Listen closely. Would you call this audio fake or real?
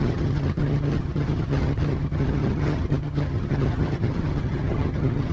fake